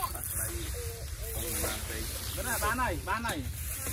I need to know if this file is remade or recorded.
recorded